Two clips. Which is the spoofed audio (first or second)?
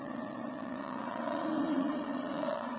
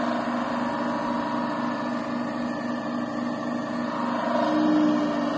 first